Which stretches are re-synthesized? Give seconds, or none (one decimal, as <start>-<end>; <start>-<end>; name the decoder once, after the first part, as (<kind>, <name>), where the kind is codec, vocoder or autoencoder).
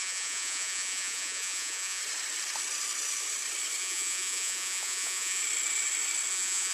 0.0-2.0 (vocoder, Vocos); 3.8-5.4; 6.3-6.7